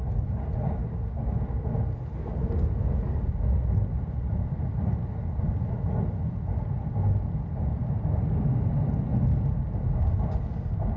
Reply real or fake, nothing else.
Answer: real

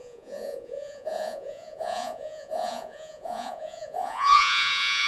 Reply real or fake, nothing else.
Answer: fake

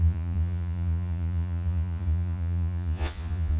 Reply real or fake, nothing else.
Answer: fake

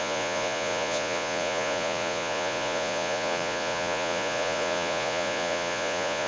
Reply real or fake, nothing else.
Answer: fake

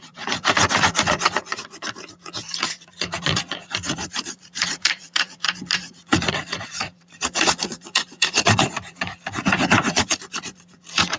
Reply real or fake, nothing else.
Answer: fake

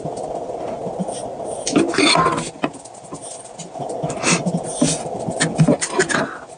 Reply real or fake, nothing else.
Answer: real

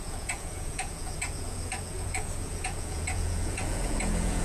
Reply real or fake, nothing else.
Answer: fake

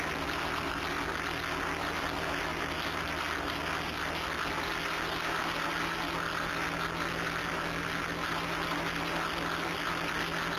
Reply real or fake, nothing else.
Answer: real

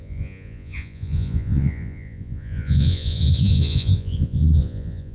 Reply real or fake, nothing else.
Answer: fake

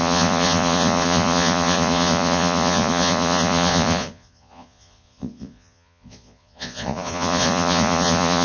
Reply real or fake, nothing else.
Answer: fake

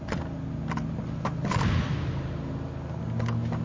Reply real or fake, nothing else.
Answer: real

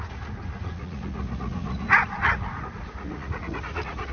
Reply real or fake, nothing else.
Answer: fake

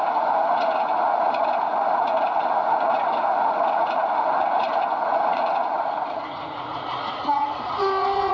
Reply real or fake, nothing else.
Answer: fake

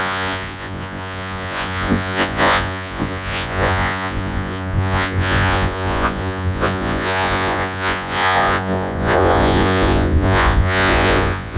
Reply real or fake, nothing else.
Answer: fake